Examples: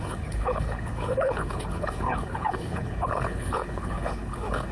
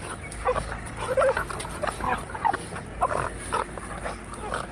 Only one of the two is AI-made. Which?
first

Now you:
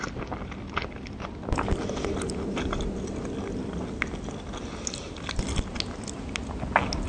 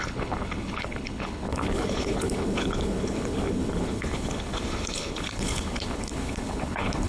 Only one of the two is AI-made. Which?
second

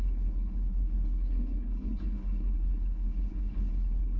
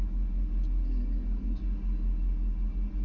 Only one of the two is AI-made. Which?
first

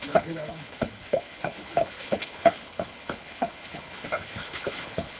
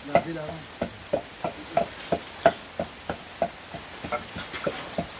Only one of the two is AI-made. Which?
first